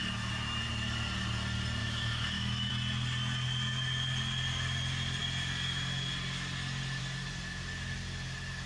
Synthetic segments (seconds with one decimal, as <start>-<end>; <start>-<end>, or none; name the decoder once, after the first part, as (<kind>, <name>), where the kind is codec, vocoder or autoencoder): 1.8-2.7 (autoencoder, DAC-VAE)